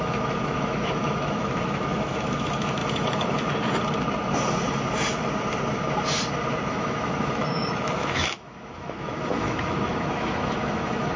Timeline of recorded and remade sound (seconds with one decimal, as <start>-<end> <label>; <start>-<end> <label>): 0.0-2.8 remade; 2.8-6.7 recorded; 6.7-11.2 remade